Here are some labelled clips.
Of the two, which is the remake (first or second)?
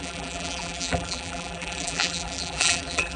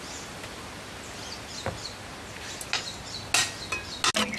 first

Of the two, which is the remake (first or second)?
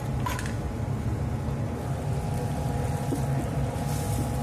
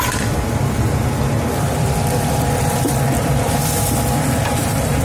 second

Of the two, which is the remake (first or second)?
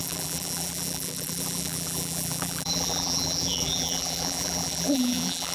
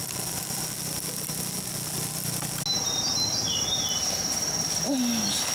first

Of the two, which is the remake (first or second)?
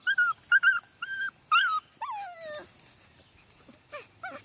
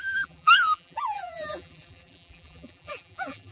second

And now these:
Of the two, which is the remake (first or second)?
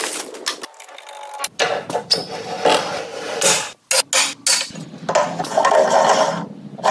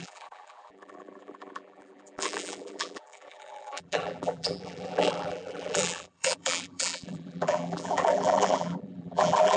second